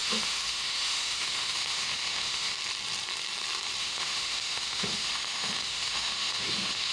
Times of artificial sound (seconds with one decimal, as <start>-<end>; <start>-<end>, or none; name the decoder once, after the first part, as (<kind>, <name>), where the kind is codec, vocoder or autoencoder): 0.0-2.5 (autoencoder, DAC-VAE); 3.8-6.9